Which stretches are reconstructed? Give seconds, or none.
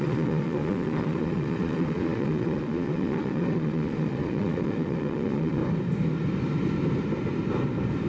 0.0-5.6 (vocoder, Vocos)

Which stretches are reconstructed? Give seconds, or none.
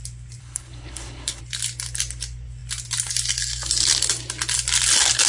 0.4-1.4 (codec, HILCodec)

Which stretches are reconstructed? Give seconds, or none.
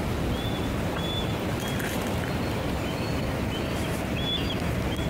none